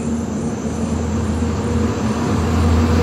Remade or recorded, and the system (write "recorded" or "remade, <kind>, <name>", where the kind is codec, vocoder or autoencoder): recorded